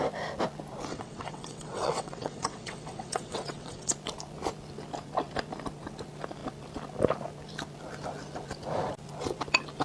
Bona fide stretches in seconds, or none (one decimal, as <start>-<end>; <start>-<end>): 0.0-0.9; 3.9-9.8